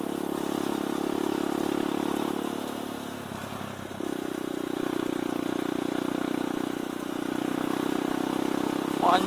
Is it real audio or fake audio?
real